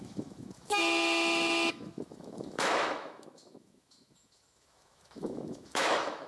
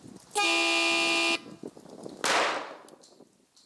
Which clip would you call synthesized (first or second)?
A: first